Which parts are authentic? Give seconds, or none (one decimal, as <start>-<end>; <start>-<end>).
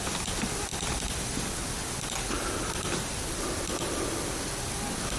0.0-5.2